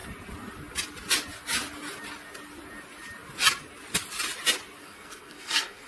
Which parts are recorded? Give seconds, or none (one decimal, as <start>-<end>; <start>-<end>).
0.0-4.8